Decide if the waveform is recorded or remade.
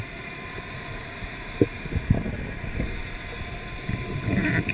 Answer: recorded